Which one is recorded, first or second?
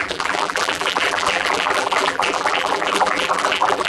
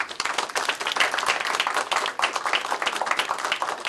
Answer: second